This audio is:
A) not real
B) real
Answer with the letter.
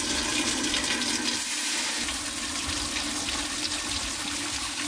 B